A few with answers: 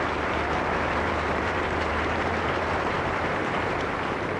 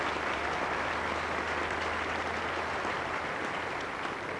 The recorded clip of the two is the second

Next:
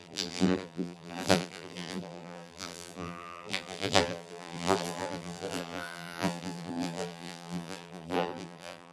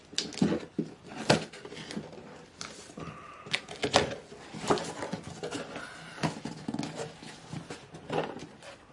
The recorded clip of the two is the second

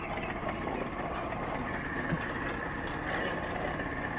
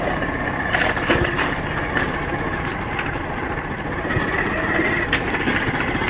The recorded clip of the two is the first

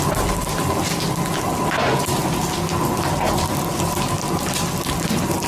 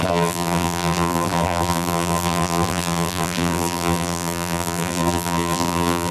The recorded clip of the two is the first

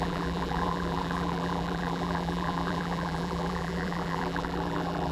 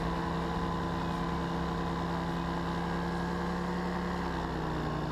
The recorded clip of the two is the second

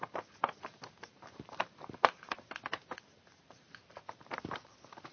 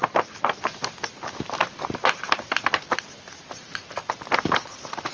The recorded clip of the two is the second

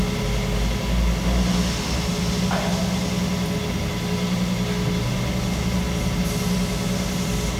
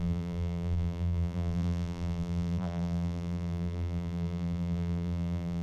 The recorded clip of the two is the first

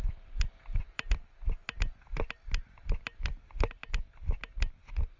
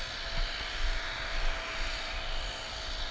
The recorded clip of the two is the second